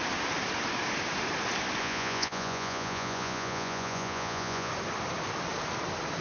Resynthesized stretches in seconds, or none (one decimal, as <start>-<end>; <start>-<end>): 1.8-4.7